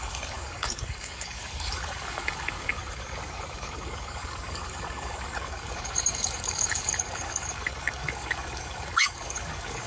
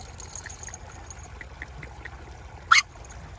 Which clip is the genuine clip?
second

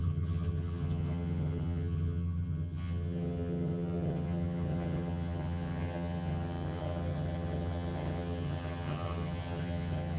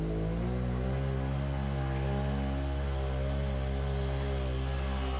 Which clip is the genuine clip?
second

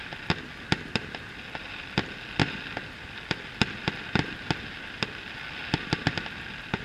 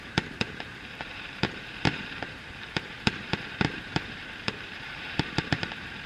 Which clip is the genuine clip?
first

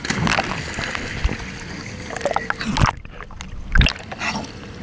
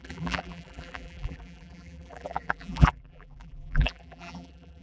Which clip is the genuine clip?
first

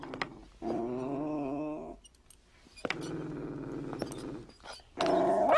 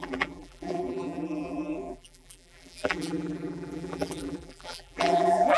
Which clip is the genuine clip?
first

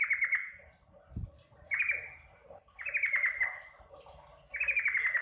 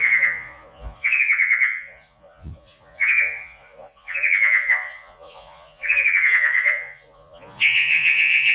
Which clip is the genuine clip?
first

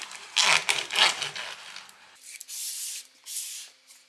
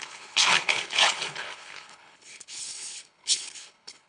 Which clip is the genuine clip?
first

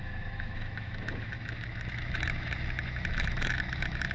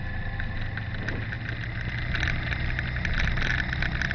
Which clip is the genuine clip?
second